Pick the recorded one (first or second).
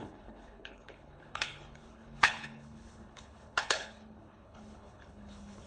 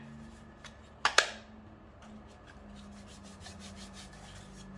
second